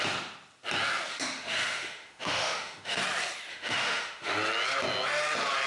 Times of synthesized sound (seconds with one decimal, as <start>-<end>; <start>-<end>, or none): 1.1-3.0; 3.5-4.3